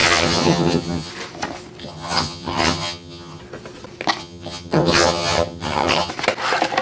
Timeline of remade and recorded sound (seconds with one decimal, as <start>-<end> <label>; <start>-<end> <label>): 0.0-1.1 remade; 1.1-1.8 recorded; 1.8-3.4 remade; 3.4-4.2 recorded; 4.2-6.1 remade; 6.1-6.8 recorded